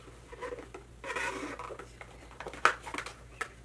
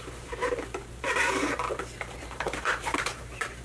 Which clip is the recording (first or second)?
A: first